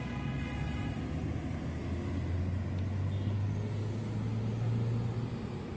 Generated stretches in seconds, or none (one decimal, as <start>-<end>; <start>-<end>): none

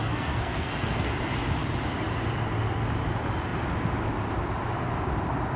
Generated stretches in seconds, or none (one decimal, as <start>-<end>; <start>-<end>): 0.0-1.1

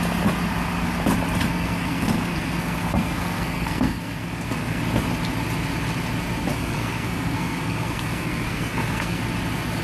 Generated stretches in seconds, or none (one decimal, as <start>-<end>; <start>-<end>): 1.5-4.8; 6.5-9.2